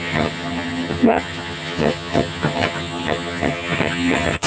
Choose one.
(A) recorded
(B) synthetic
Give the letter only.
B